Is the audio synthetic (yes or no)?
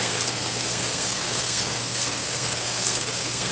yes